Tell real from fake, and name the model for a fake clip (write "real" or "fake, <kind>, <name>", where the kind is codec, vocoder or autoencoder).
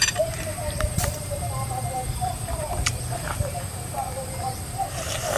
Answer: fake, vocoder, BigVGAN v2